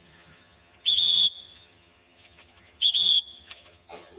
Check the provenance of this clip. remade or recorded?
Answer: remade